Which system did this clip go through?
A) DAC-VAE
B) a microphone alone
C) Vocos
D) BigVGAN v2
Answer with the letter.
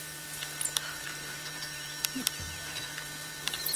D